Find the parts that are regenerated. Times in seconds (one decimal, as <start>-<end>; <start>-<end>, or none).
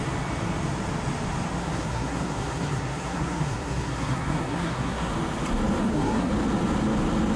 1.6-5.1; 5.8-6.3